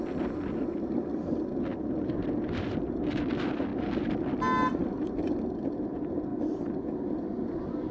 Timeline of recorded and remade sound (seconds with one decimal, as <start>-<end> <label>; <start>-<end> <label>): 0.0-1.7 remade; 1.7-2.6 recorded; 2.6-3.7 remade; 3.7-5.1 recorded; 5.1-6.3 remade; 6.3-6.9 recorded; 6.9-7.9 remade